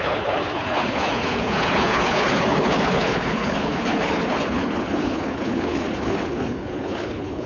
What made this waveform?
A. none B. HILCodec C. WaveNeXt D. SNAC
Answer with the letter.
B